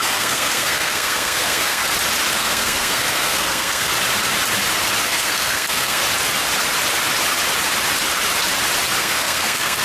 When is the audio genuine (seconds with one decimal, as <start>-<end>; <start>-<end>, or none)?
1.8-2.3; 3.9-5.0; 6.0-9.0